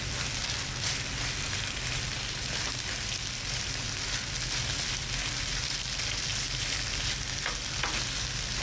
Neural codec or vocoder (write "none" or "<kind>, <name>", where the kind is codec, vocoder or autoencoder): none